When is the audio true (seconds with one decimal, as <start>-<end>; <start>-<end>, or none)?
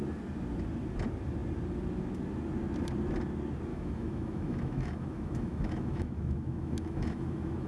0.0-3.7